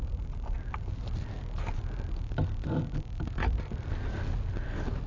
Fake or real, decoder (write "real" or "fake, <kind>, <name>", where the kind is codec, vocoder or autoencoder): real